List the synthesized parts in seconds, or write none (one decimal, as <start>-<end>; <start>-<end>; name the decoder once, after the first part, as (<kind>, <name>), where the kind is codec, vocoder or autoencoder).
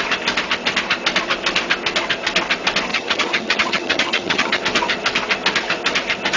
2.9-4.6 (vocoder, HiFi-GAN)